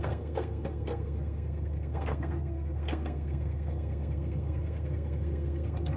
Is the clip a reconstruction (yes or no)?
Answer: yes